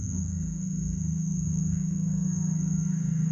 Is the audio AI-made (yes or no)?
yes